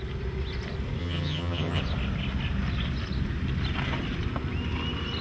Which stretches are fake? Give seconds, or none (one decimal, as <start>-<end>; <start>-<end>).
1.0-1.8